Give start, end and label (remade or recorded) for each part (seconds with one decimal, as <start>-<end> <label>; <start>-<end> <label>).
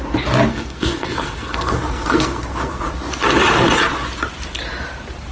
0.0-0.5 recorded; 0.5-2.8 remade; 2.8-5.3 recorded